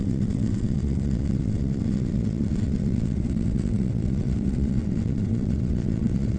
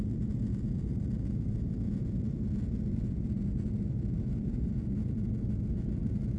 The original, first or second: second